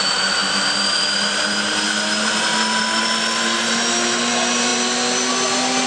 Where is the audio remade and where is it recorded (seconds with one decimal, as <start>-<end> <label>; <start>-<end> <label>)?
0.0-5.9 recorded